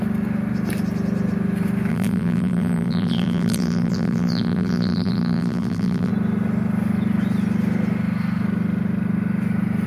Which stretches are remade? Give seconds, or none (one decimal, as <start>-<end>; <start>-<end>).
1.9-6.1